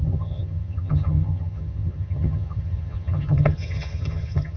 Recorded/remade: remade